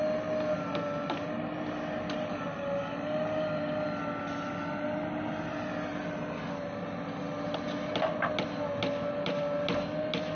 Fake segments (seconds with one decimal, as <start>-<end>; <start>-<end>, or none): none